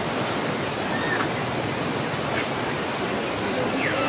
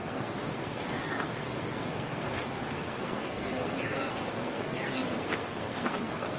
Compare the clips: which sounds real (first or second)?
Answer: first